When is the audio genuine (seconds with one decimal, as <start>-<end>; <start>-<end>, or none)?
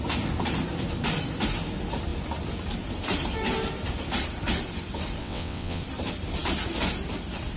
0.0-5.2; 5.8-7.6